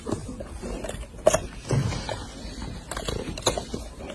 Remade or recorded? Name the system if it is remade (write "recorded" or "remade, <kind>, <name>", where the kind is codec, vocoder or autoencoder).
recorded